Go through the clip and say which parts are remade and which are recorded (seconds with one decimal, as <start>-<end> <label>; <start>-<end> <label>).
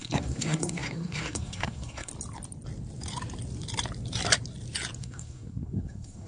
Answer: 0.0-2.1 remade; 2.1-5.0 recorded; 5.0-6.3 remade